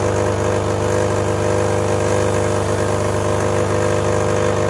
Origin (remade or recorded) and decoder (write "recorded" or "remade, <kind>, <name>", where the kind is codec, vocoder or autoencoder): recorded